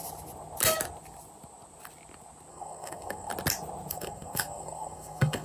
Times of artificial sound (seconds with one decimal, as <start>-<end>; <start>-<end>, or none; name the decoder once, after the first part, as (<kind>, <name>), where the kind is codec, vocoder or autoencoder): 2.5-3.3 (codec, SNAC); 3.9-5.4